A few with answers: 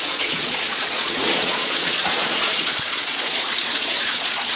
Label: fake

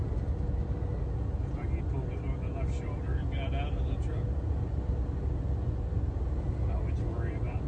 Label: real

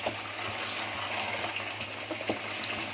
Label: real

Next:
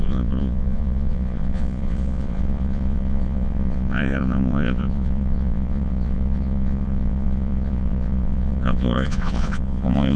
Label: fake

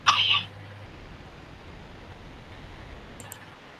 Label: real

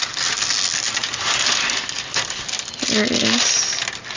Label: real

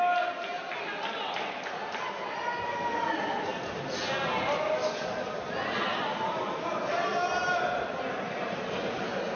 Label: real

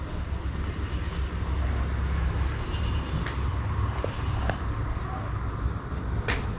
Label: real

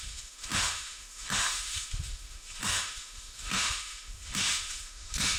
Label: fake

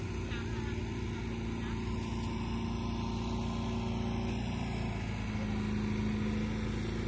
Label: real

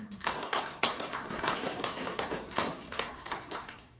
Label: fake